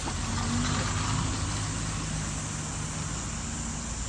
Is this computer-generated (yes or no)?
no